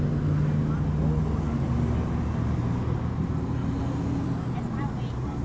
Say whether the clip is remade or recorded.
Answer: recorded